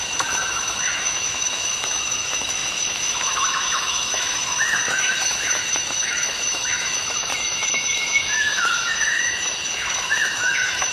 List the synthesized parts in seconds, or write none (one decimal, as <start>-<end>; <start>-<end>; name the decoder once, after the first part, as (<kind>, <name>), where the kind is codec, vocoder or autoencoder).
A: 0.0-10.9 (autoencoder, DAC-VAE)